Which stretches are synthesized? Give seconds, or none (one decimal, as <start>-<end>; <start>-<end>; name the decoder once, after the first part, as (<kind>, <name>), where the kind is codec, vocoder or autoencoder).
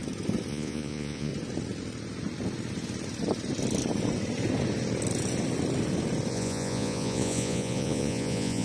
0.5-1.3 (vocoder, Vocos); 6.3-8.6